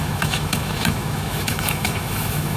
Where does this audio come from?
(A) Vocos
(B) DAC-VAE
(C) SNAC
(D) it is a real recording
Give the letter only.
B